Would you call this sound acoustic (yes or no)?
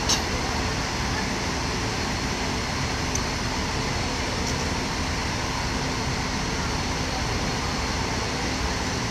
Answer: yes